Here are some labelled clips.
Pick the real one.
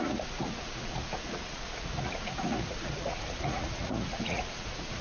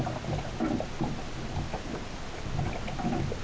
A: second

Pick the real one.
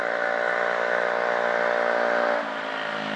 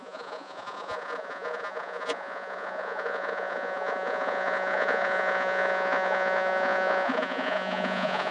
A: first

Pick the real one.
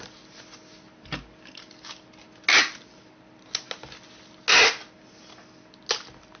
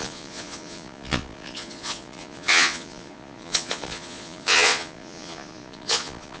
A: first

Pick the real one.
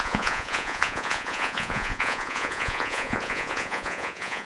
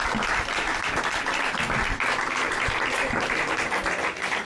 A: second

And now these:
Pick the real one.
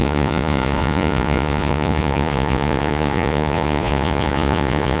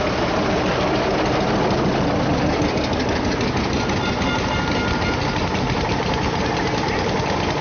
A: second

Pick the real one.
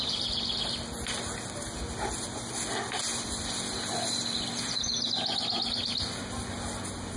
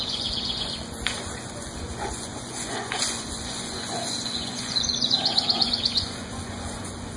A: first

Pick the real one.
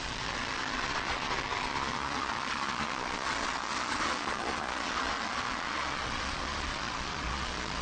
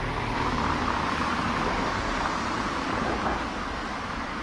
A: second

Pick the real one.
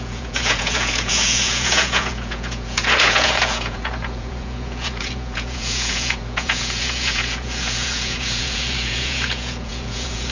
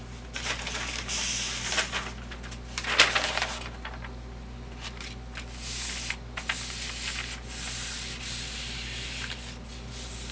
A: second